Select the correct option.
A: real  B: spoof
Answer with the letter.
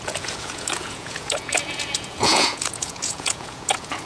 B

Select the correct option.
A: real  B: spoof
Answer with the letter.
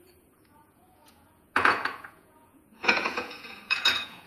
B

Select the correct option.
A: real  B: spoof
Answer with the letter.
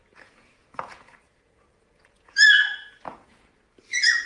B